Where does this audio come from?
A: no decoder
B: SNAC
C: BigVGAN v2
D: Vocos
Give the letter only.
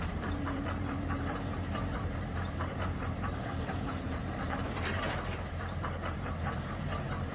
C